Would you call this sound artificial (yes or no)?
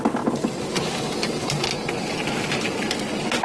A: no